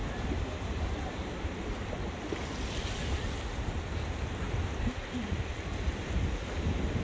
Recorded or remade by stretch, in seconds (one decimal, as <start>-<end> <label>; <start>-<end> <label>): 0.0-7.0 recorded